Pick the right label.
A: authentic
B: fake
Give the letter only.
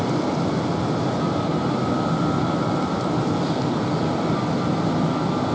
A